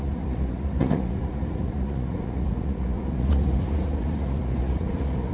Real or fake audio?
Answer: fake